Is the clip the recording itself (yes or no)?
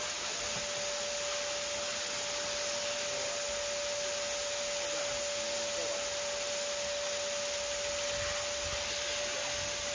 yes